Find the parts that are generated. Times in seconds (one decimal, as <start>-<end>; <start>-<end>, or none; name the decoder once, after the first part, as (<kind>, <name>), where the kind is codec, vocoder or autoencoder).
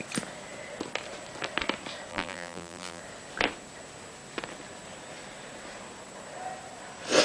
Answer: 2.1-3.0 (vocoder, BigVGAN v2)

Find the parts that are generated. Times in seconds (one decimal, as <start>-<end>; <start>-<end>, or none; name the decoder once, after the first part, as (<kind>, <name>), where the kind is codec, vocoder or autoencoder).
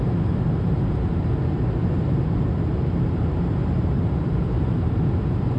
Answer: 0.0-1.1 (vocoder, BigVGAN v2); 3.7-5.6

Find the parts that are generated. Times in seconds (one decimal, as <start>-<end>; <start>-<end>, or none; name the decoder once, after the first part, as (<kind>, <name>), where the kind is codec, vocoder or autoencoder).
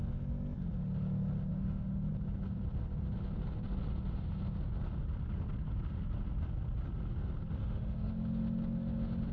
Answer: 1.5-2.1 (autoencoder, DAC-VAE); 7.6-8.1